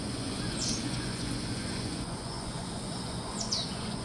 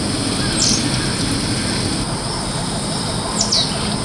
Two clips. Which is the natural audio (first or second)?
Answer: second